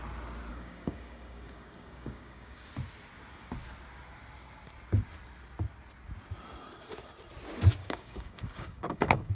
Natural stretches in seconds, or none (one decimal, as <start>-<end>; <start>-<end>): 0.0-0.5; 2.7-7.8